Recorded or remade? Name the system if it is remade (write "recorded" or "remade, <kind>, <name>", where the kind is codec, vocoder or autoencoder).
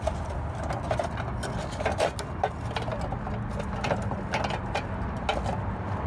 recorded